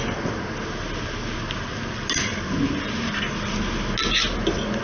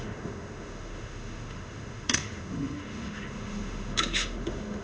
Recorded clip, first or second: first